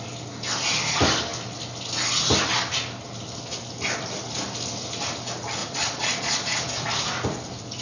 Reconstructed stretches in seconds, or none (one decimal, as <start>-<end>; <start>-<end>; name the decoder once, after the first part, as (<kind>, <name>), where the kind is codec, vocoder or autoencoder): 5.6-6.6 (vocoder, Vocos)